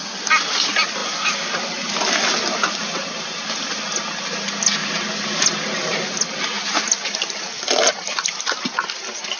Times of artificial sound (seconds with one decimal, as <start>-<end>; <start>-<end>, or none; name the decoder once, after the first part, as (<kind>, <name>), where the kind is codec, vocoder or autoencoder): none